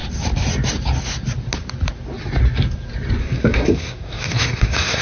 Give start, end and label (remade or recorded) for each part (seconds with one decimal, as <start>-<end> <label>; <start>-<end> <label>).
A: 0.0-3.2 recorded; 3.2-5.0 remade